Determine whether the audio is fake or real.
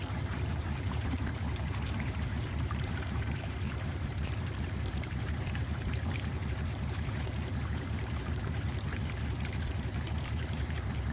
fake